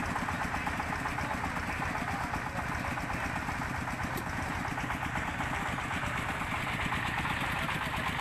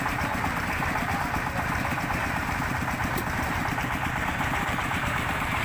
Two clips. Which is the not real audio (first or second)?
second